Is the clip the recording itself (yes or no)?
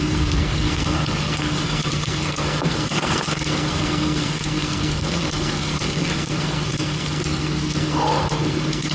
no